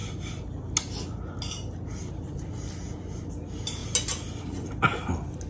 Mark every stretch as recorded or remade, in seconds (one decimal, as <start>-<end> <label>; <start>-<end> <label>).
0.0-5.5 recorded

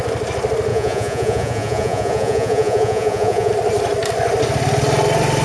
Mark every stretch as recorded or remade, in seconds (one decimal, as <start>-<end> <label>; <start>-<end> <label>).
0.0-0.7 recorded; 0.7-3.5 remade; 3.5-5.4 recorded

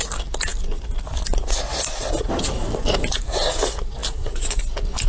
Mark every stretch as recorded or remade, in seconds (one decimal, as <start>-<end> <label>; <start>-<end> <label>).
0.0-5.1 recorded

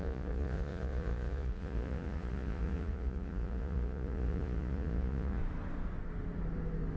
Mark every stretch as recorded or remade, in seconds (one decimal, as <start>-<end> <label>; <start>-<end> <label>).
0.0-5.4 remade; 5.4-7.0 recorded